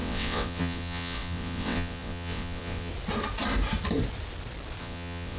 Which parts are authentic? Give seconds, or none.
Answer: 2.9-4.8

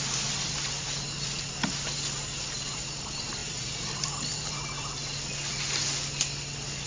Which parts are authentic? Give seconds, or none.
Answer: 0.0-3.4; 5.6-6.9

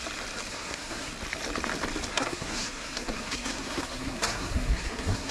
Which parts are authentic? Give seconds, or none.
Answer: 0.0-0.5; 1.1-2.1

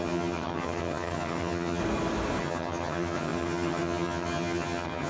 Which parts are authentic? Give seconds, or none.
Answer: 1.8-2.4

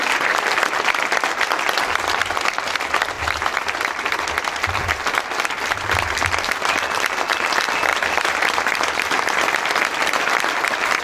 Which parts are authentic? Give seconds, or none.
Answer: 0.0-3.2; 4.3-7.9

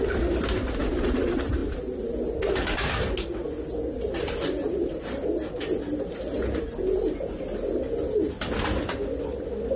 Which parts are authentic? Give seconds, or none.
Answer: 0.0-9.8